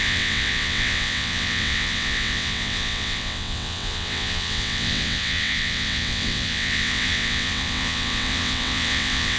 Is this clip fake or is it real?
fake